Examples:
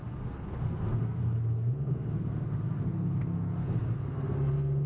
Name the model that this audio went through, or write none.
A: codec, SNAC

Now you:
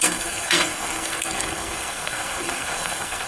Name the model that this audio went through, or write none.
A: codec, SNAC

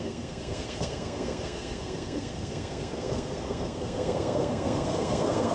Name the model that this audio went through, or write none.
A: codec, SNAC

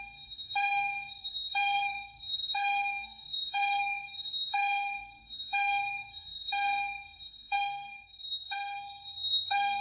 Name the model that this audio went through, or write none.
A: codec, SNAC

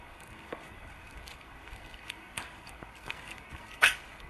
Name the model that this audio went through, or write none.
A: codec, SNAC